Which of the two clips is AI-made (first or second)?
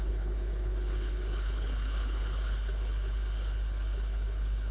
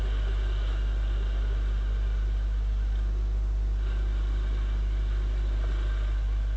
first